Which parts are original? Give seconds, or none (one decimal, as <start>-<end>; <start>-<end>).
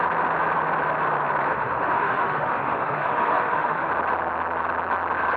0.0-1.5; 3.9-5.4